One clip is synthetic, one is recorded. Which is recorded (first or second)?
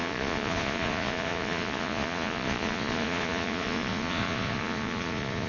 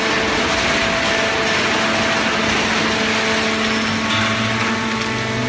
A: second